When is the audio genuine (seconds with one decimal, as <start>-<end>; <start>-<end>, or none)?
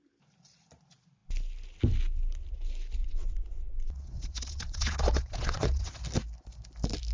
0.0-3.0; 6.0-7.1